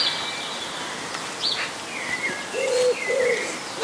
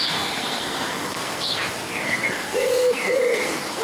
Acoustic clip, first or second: first